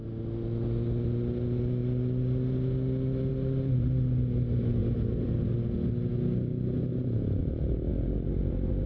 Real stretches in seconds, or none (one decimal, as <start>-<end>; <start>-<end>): 0.0-8.9